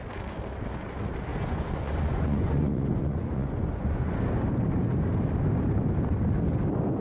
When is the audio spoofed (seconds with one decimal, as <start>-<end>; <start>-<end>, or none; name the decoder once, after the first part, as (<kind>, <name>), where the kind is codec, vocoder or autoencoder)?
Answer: 1.3-4.2 (vocoder, Vocos)